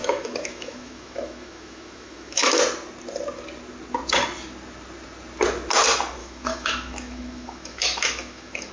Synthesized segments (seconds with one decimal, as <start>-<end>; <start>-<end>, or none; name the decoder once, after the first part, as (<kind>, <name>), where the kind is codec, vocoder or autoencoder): 0.0-2.6 (autoencoder, DAC-VAE); 6.2-8.7